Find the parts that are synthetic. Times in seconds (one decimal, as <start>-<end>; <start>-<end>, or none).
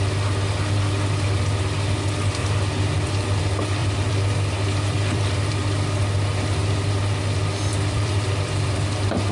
2.4-3.4; 3.8-5.5; 7.7-8.7